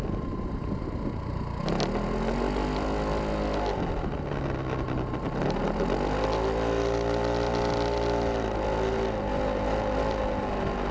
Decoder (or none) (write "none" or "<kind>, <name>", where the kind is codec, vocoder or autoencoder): none